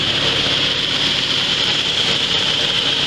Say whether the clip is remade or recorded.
remade